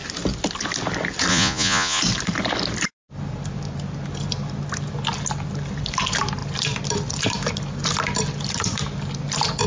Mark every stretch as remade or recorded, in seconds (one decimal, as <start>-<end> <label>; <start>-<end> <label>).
0.0-1.3 recorded; 1.3-2.0 remade; 2.0-9.7 recorded